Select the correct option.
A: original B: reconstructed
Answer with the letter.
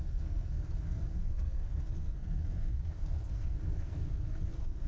B